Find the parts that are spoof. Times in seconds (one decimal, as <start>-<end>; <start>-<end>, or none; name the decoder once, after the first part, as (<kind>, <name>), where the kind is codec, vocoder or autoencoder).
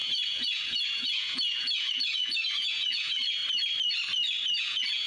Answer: 0.0-3.4 (vocoder, Vocos); 4.6-5.1